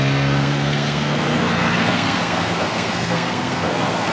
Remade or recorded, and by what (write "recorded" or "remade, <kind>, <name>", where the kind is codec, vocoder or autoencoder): remade, codec, SNAC